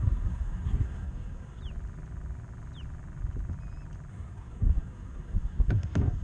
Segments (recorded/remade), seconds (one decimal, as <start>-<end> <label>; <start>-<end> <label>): 0.0-1.6 remade; 1.6-4.1 recorded; 4.1-6.2 remade